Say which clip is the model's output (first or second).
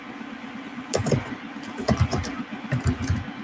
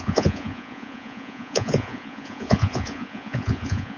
second